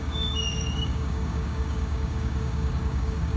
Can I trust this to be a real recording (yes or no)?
no